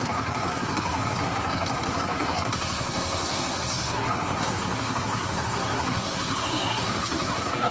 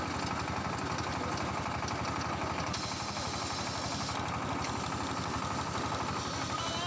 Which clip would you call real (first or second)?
second